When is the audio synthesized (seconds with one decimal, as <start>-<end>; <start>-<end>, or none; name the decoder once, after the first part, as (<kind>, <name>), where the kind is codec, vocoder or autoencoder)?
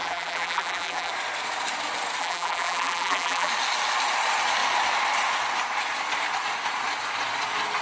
0.0-1.1 (vocoder, BigVGAN v2); 2.2-3.5